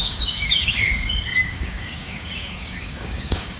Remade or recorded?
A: remade